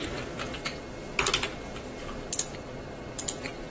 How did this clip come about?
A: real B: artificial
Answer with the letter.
A